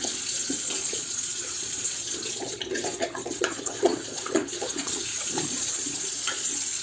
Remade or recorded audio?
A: remade